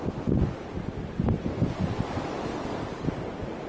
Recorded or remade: recorded